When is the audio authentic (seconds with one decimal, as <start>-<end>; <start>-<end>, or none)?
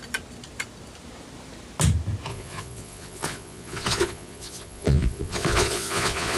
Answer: 0.0-2.3